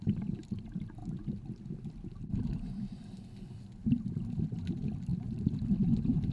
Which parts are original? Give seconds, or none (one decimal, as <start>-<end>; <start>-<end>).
0.0-6.3